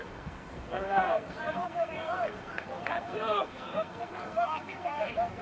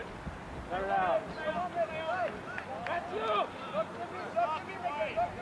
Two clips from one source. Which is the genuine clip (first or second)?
second